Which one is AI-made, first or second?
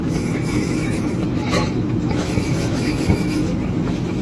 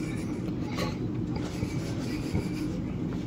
first